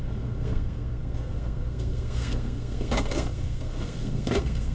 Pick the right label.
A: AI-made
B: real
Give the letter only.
A